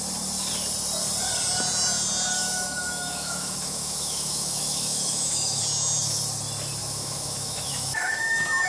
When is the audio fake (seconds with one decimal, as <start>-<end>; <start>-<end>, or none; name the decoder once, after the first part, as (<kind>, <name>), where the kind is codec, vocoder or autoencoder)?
2.4-5.6 (autoencoder, DAC-VAE); 6.8-8.7